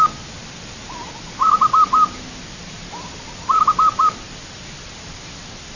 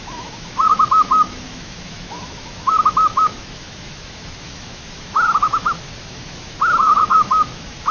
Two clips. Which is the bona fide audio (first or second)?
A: first